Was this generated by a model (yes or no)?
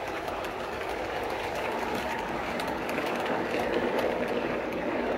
yes